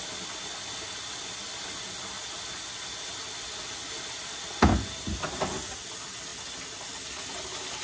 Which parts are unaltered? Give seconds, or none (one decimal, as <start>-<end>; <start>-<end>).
0.0-7.8